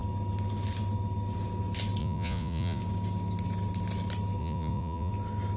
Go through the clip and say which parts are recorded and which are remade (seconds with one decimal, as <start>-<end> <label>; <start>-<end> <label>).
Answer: 0.0-2.0 recorded; 2.0-2.8 remade; 2.8-4.4 recorded; 4.4-5.1 remade; 5.1-5.6 recorded